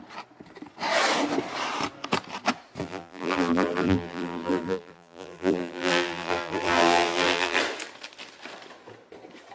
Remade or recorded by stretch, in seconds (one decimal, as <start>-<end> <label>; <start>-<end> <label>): 0.0-2.8 recorded; 2.8-7.6 remade; 7.6-9.5 recorded